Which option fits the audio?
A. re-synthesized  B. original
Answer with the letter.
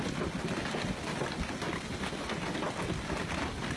B